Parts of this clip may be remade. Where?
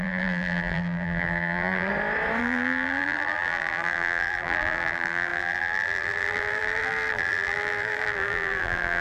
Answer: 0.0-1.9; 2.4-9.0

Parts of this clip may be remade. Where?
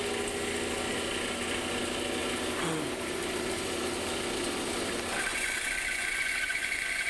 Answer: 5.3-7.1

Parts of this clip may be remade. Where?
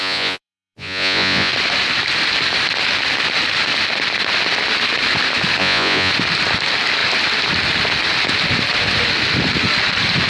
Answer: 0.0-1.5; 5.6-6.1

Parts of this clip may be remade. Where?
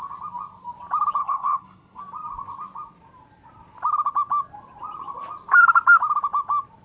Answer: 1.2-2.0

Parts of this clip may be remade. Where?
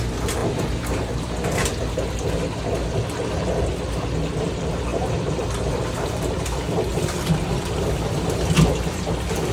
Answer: 4.9-8.7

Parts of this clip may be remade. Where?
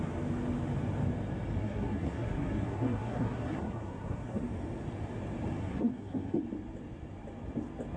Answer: 1.6-4.4; 5.6-6.4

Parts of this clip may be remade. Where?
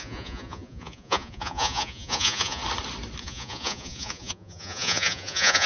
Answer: 0.0-2.6; 3.2-5.7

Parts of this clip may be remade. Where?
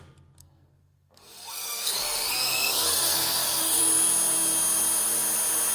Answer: 0.4-3.8